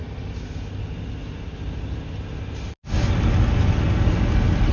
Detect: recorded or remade recorded